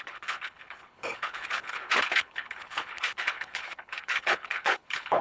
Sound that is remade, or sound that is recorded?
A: remade